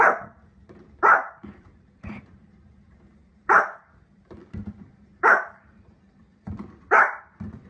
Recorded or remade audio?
remade